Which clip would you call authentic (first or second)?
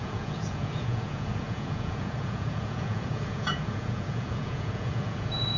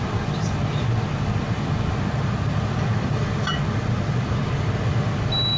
second